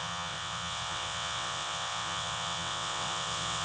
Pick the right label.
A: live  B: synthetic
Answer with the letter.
B